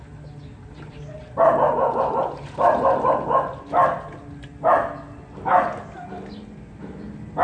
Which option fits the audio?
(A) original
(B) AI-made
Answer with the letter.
A